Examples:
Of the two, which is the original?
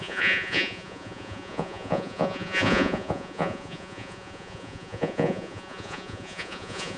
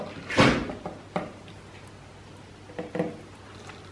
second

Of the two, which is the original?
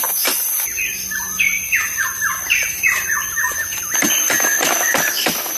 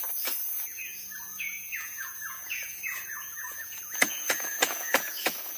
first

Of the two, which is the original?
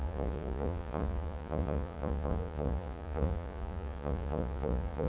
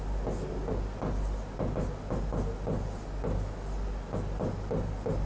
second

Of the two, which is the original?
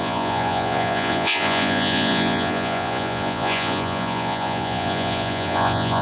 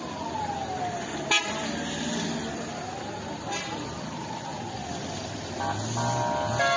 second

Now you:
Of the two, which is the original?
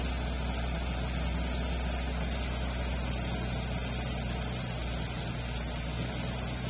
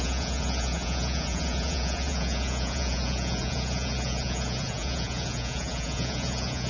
first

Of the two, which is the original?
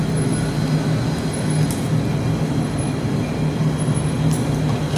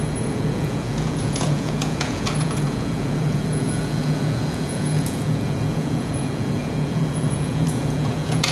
first